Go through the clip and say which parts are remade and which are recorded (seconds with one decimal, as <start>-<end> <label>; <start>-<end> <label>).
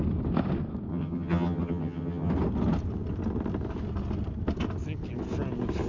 0.0-0.9 recorded; 0.9-2.3 remade; 2.3-5.9 recorded